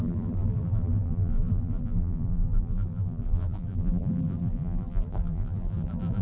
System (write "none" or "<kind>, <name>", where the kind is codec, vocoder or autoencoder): vocoder, BigVGAN v2